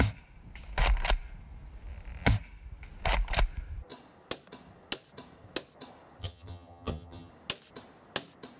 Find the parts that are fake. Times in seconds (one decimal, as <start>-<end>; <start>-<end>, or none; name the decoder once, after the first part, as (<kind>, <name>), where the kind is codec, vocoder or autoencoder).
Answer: 6.2-7.3 (vocoder, HiFi-GAN)